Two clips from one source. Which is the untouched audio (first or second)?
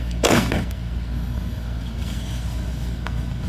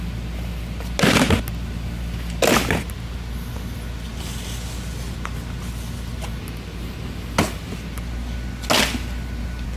second